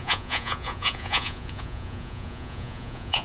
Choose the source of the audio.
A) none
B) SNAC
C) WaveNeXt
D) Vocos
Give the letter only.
D